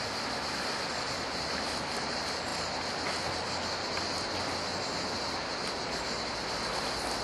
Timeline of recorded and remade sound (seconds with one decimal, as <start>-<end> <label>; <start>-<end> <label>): 0.0-7.2 recorded